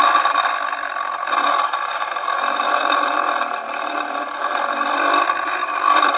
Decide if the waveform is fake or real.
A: fake